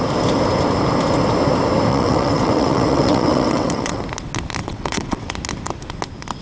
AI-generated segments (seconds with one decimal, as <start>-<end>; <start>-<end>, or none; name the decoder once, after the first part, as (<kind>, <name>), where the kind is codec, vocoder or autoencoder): 1.9-4.0 (vocoder, WaveNeXt); 4.6-5.3